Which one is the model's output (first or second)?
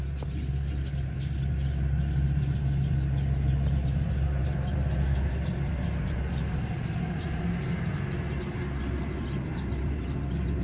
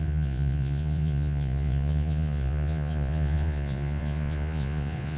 second